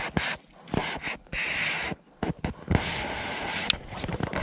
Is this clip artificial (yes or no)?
no